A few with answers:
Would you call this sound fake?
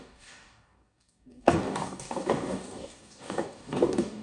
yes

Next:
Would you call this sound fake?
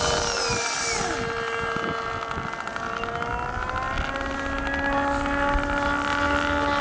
no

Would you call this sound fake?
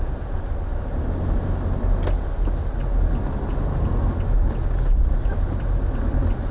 no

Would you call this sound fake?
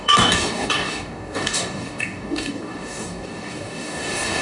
yes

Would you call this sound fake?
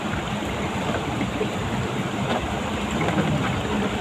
no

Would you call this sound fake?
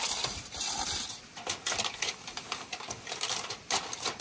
no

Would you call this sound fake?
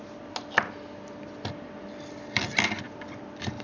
no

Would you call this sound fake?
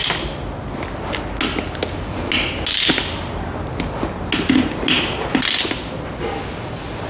no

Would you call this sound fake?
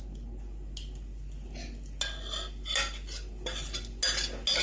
no